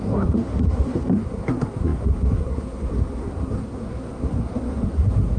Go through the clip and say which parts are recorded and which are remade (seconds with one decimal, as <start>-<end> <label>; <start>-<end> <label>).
0.0-5.4 remade